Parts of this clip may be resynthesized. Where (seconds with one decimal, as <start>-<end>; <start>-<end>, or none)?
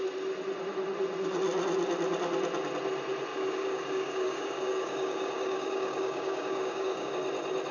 3.3-7.1